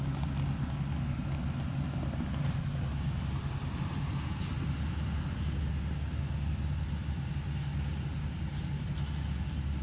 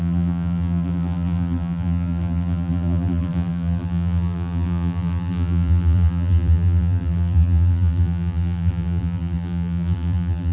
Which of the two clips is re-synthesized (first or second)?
second